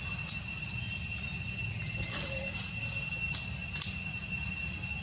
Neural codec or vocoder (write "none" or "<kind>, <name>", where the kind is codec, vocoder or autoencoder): none